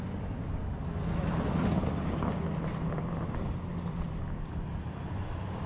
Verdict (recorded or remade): recorded